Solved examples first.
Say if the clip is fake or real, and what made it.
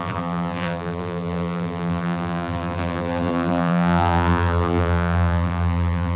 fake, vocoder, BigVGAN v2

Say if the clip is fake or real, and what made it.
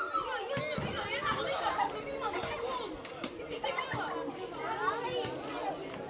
real